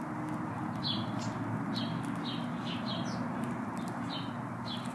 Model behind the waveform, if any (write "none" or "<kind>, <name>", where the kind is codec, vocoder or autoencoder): none